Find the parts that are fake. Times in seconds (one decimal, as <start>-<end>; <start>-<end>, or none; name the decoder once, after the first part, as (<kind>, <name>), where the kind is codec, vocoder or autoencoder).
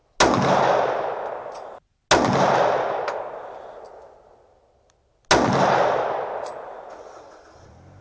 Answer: none